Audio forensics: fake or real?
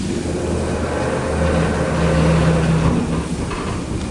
real